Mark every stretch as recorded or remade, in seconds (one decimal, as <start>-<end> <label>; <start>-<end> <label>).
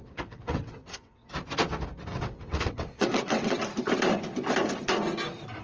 0.0-1.3 remade; 1.3-2.1 recorded; 2.1-3.6 remade; 3.6-5.6 recorded